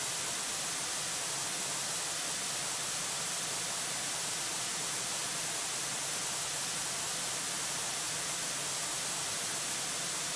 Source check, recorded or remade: recorded